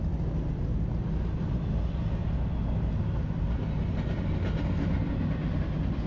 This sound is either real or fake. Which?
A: real